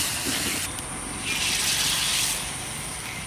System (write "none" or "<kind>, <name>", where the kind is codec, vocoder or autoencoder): none